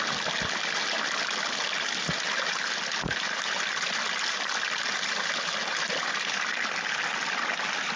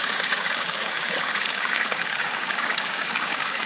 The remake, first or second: second